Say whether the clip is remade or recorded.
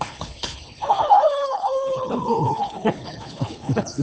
remade